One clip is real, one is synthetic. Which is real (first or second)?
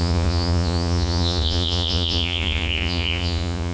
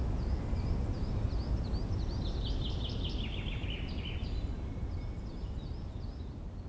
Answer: second